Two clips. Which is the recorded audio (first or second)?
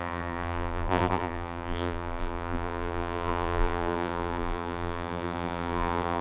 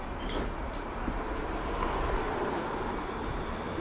second